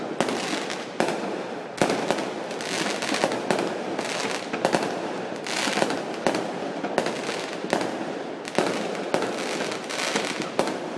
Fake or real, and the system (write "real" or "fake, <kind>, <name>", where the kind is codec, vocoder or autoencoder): real